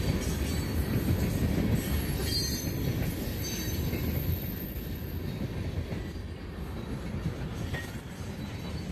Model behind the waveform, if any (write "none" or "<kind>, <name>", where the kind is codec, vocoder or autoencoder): none